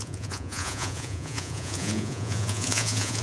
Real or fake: fake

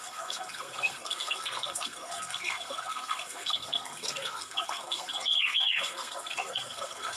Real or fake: fake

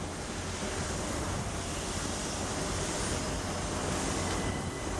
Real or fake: fake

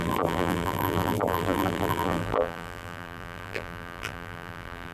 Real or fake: fake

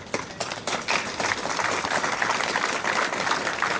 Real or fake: real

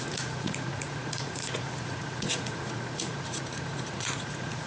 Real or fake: fake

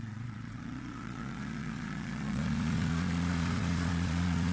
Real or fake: fake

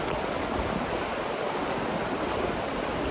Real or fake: real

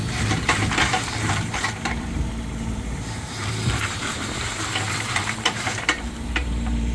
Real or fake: fake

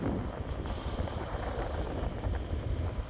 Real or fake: real